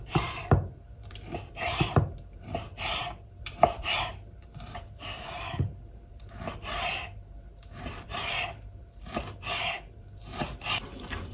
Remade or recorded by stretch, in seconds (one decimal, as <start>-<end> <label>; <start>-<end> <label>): 0.0-11.3 remade